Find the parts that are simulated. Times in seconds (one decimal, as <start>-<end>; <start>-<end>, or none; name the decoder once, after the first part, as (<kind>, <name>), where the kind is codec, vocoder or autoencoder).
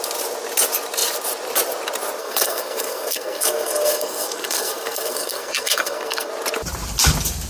2.2-6.3 (codec, SNAC)